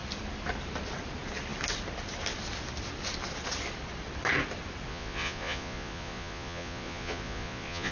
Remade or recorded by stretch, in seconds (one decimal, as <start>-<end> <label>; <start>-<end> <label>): 0.0-4.9 recorded; 4.9-7.9 remade